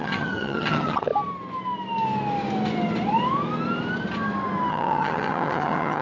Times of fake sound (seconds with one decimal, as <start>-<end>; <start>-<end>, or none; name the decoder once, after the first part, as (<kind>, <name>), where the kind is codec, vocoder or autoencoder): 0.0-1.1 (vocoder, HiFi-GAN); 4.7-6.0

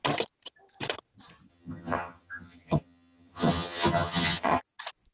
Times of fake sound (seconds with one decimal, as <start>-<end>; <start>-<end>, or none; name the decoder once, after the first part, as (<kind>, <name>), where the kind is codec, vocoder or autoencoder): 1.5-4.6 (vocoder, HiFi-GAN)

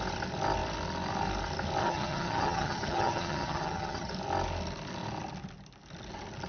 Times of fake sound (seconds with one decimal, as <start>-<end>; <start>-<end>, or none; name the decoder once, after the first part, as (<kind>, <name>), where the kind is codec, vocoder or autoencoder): 1.8-4.1 (vocoder, HiFi-GAN)

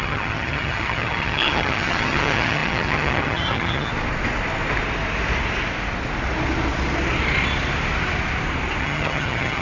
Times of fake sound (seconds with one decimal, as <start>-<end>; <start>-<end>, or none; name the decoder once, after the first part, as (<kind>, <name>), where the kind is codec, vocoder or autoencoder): 0.0-3.9 (vocoder, HiFi-GAN); 8.8-9.6

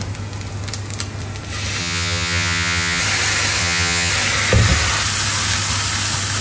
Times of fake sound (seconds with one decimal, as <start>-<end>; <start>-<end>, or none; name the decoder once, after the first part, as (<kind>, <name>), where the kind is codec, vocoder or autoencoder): 1.8-3.0 (vocoder, HiFi-GAN); 3.6-4.1